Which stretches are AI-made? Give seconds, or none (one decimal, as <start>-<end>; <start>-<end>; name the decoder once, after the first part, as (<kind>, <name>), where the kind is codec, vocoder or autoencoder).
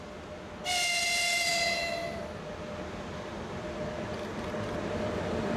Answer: none